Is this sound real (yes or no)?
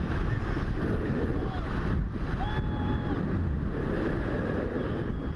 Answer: yes